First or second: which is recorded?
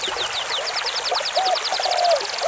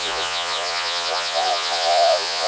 first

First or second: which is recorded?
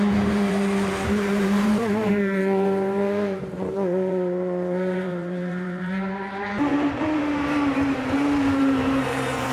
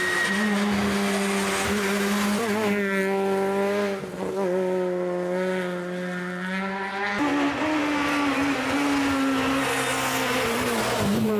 second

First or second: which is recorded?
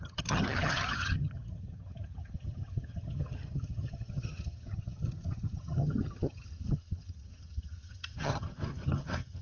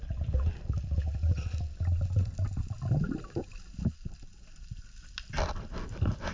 second